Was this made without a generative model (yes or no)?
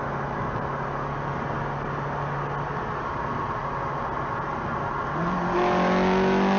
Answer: yes